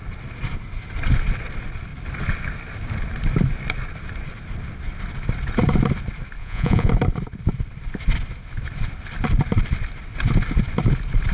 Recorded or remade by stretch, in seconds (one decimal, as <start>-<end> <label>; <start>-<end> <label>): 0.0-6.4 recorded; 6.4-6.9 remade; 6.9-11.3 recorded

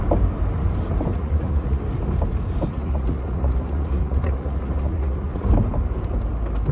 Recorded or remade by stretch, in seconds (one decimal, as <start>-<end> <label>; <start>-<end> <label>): 0.0-1.1 recorded; 1.1-1.8 remade; 1.8-2.7 recorded; 2.7-5.5 remade; 5.5-6.7 recorded

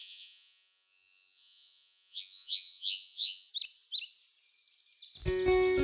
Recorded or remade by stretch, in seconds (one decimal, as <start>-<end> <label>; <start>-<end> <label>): 0.0-3.5 remade; 3.5-5.8 recorded